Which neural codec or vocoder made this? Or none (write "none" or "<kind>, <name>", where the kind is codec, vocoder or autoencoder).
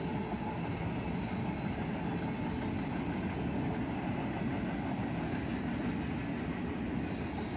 none